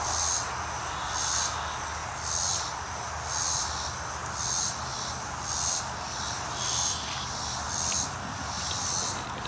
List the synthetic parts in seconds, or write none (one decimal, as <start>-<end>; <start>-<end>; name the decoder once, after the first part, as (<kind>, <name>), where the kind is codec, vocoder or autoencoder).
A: none